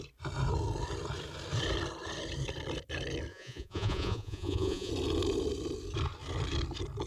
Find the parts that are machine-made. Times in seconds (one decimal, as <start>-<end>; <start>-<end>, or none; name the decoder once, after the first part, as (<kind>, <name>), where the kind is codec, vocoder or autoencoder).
3.3-4.9 (vocoder, Vocos)